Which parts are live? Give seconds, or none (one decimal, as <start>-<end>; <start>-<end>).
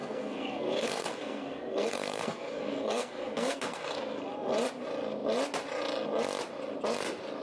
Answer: 4.2-7.4